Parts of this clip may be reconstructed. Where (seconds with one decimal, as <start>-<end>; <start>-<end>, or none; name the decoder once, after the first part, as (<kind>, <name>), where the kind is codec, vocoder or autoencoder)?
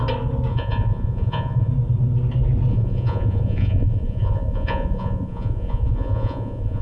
0.5-1.7 (vocoder, Vocos); 2.7-6.8